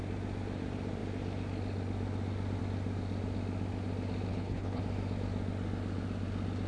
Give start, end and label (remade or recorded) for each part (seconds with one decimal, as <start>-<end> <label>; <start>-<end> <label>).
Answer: 0.0-4.3 recorded; 4.3-4.8 remade; 4.8-6.7 recorded